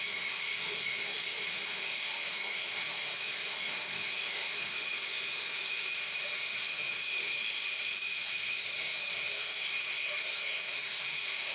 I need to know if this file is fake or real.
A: fake